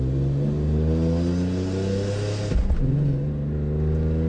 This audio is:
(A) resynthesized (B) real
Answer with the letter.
B